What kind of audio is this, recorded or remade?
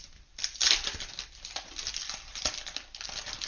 remade